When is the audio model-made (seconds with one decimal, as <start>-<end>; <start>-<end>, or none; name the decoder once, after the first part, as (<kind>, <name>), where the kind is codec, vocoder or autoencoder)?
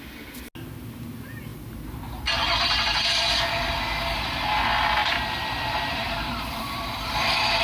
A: 5.0-7.1 (vocoder, BigVGAN v2)